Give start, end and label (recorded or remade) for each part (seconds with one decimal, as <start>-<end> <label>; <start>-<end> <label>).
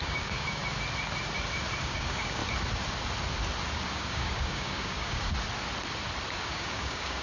0.0-0.6 remade; 0.6-1.8 recorded; 1.8-2.4 remade; 2.4-3.9 recorded; 3.9-5.3 remade; 5.3-6.4 recorded; 6.4-7.2 remade